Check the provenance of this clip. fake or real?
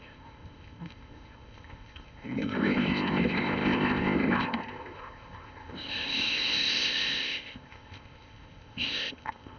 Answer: fake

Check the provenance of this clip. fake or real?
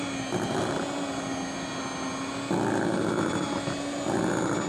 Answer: real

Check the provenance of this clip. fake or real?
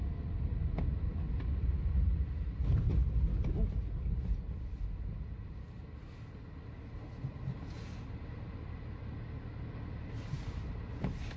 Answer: real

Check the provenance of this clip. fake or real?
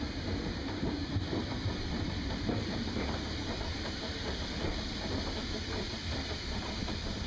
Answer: fake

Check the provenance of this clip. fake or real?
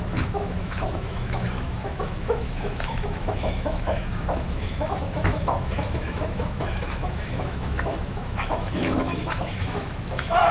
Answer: fake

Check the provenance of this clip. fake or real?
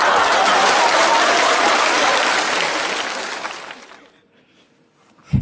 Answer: real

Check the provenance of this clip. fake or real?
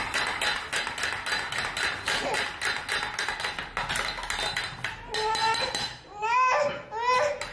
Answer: real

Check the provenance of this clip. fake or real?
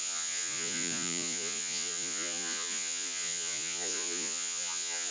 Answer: fake